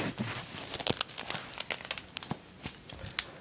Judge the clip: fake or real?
real